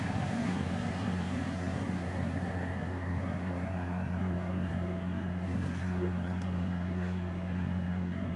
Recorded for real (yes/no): no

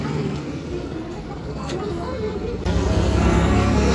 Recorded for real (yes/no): no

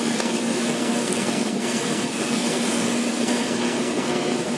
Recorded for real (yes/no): no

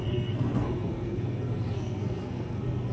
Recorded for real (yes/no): no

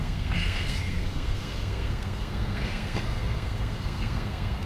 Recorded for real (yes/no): no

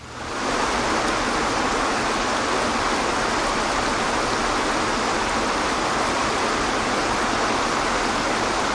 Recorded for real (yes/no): yes